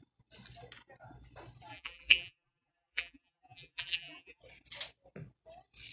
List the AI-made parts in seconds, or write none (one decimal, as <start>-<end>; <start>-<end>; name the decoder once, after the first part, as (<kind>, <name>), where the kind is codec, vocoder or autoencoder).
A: 1.7-4.4 (vocoder, BigVGAN v2)